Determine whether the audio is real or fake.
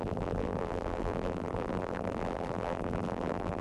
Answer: fake